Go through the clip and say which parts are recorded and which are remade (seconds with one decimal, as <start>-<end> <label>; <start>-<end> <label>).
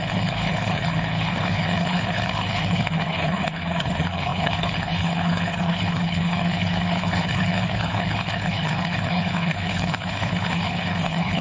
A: 0.0-11.4 remade